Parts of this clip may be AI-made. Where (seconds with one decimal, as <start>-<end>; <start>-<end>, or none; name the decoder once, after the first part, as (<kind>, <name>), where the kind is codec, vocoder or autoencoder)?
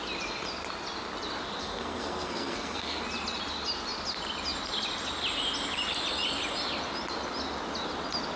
1.6-3.0 (codec, SNAC)